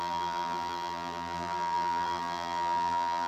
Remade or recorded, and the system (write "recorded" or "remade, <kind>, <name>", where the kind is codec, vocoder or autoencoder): remade, vocoder, BigVGAN v2